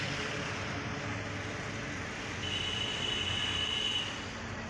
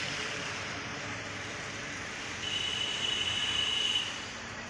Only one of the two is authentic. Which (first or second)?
first